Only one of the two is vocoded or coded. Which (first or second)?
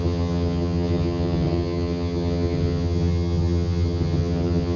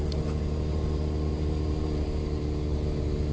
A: first